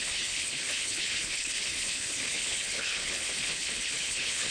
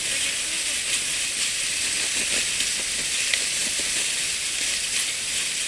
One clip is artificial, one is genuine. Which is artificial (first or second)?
first